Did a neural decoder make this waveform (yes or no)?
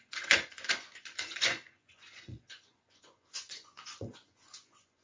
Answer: yes